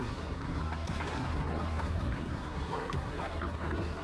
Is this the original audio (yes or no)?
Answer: no